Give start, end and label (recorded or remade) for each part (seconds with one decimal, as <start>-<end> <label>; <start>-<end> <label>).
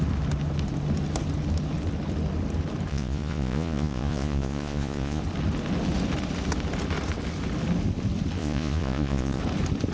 0.0-2.9 recorded; 2.9-5.2 remade; 5.2-8.4 recorded; 8.4-9.4 remade; 9.4-9.9 recorded